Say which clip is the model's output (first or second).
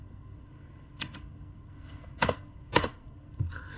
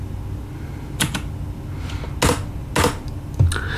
first